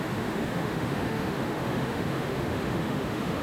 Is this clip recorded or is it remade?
remade